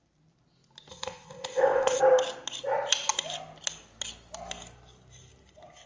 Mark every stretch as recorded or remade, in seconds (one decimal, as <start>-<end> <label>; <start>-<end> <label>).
0.0-0.9 recorded; 0.9-2.0 remade; 2.0-5.9 recorded